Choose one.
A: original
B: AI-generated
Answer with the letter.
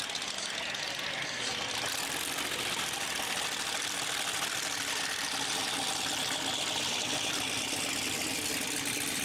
A